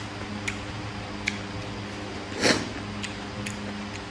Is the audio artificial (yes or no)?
no